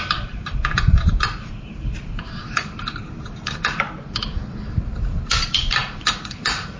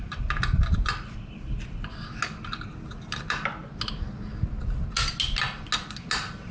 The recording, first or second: second